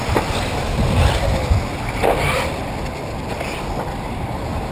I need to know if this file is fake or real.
real